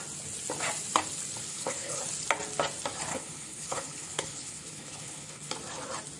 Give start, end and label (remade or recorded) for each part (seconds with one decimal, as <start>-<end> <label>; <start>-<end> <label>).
0.0-1.5 recorded; 1.5-2.0 remade; 2.0-3.1 recorded; 3.1-5.5 remade; 5.5-6.2 recorded